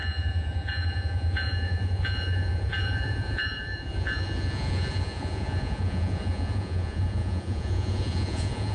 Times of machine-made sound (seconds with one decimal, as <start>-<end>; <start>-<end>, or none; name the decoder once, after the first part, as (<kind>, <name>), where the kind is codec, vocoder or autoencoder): 0.0-8.7 (vocoder, Vocos)